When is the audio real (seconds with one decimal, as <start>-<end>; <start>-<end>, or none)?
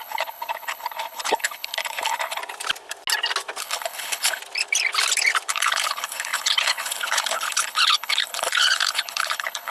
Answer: 2.4-3.6; 4.4-5.5